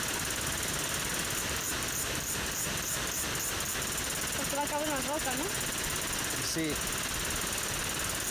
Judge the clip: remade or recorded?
recorded